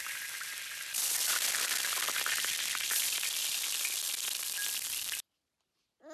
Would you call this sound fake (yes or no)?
no